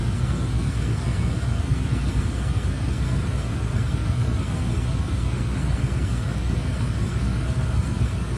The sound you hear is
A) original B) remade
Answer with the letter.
B